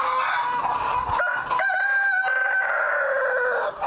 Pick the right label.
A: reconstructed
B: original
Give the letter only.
B